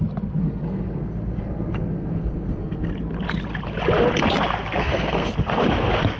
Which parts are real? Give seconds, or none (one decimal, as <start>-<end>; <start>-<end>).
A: 0.0-0.4; 2.9-4.8; 5.3-6.2